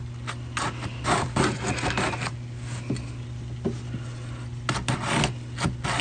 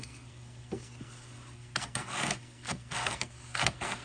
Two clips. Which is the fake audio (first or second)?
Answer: second